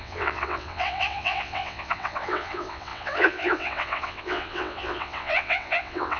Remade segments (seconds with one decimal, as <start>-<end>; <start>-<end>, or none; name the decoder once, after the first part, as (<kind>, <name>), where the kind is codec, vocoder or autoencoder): 0.0-6.2 (vocoder, WaveNeXt)